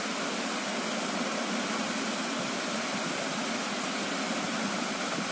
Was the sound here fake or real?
real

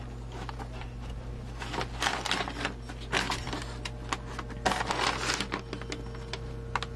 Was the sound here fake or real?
real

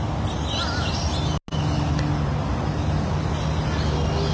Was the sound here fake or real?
real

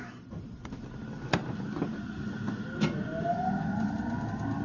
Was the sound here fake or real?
real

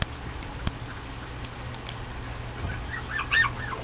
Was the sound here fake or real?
real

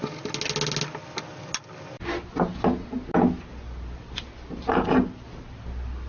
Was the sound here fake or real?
real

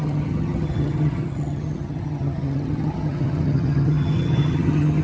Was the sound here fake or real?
fake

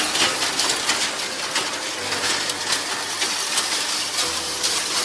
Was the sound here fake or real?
real